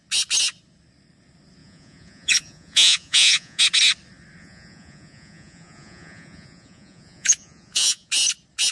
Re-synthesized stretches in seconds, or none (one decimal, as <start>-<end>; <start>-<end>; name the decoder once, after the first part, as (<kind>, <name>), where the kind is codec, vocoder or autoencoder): 1.6-3.6 (vocoder, Vocos); 4.4-8.1